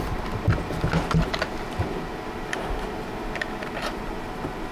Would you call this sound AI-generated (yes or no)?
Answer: no